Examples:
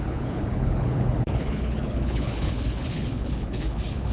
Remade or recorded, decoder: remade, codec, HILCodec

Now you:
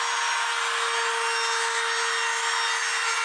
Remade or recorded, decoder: recorded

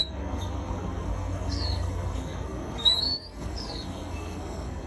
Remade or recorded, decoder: remade, codec, SNAC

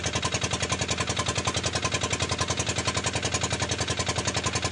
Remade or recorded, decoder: recorded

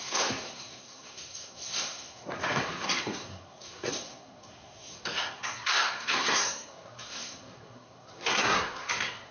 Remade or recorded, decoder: remade, codec, SNAC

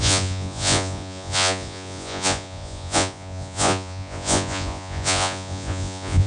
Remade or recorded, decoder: remade, vocoder, Vocos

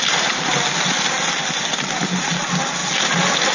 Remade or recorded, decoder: recorded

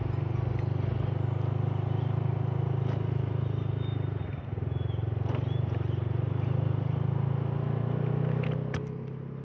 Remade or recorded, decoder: recorded